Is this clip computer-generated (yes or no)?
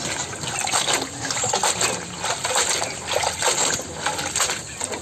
no